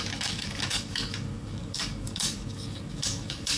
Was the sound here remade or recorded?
remade